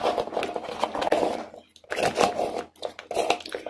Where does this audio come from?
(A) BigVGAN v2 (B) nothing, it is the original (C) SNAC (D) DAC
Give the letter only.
B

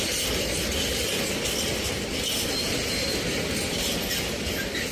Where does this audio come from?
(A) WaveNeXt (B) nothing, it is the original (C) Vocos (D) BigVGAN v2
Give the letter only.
B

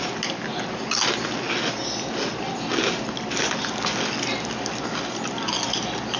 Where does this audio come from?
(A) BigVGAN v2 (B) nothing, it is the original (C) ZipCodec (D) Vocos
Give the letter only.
B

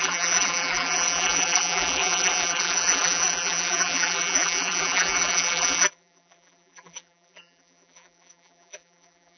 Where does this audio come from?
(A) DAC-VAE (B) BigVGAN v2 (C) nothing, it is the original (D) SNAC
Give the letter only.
B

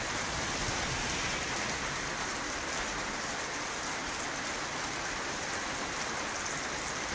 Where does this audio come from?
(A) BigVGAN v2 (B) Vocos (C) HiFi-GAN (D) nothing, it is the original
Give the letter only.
D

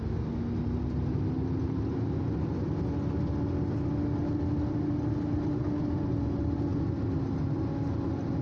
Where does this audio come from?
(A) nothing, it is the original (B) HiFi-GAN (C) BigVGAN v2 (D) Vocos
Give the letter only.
A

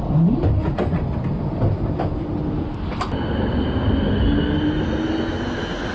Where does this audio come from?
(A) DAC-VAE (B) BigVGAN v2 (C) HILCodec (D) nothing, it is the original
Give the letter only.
D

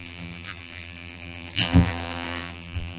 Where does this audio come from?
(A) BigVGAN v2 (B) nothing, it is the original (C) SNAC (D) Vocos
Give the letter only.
A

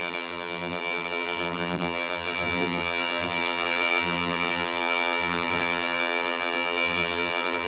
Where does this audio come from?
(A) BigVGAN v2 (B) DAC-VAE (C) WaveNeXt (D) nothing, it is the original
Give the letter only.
A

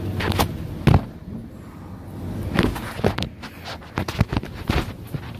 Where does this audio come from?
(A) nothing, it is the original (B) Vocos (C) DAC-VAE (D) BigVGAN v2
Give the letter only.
A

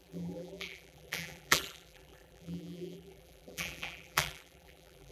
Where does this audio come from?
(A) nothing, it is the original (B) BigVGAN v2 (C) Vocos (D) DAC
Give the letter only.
B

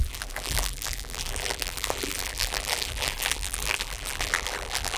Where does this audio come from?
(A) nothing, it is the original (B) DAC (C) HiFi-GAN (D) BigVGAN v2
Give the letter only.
D